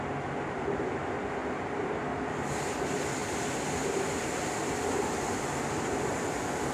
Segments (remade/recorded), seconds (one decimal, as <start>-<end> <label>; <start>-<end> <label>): 0.0-6.7 recorded